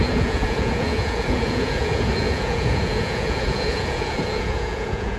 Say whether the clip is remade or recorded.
remade